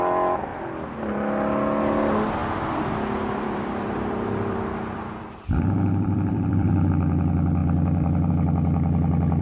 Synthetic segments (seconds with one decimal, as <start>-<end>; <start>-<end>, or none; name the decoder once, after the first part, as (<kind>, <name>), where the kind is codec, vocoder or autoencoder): 2.4-6.9 (vocoder, BigVGAN v2); 7.6-8.3